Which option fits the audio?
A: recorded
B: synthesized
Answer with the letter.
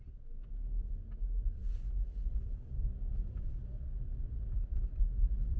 A